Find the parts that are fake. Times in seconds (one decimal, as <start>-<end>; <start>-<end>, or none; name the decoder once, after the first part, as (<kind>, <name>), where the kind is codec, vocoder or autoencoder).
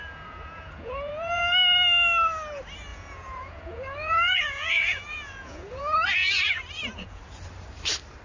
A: 0.0-1.4 (vocoder, Vocos); 2.9-5.8; 6.2-7.2